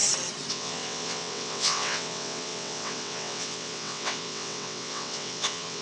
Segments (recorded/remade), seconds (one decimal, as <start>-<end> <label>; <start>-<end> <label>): 0.0-0.5 recorded; 0.5-5.8 remade